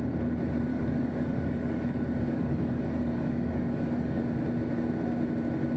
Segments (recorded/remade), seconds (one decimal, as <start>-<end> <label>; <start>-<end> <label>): 0.0-0.7 recorded; 0.7-4.2 remade; 4.2-5.8 recorded